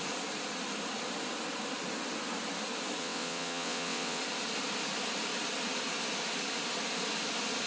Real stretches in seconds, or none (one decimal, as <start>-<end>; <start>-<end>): 0.0-3.0; 4.2-7.7